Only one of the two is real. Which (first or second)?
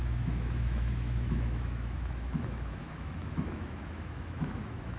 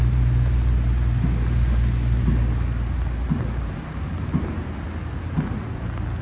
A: second